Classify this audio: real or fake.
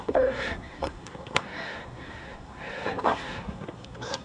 fake